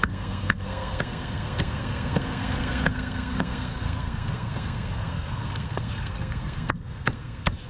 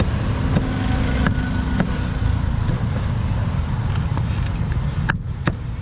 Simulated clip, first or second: first